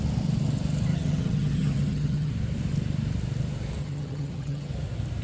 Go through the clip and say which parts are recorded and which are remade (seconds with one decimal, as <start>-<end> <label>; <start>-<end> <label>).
0.0-0.9 recorded; 0.9-2.3 remade; 2.3-3.8 recorded; 3.8-4.7 remade; 4.7-5.2 recorded